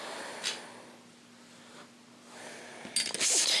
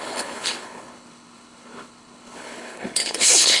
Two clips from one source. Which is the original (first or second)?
first